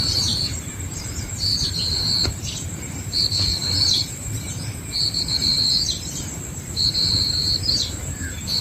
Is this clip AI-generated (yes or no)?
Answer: yes